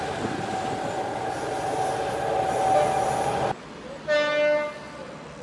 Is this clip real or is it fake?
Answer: real